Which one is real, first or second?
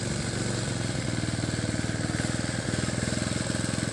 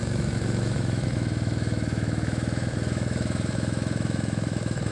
first